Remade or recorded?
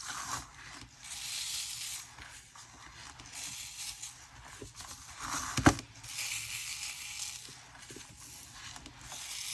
recorded